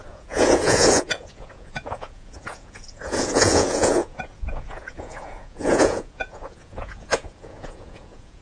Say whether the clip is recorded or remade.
remade